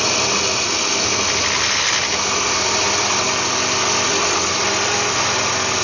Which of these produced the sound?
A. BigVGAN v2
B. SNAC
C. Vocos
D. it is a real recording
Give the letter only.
D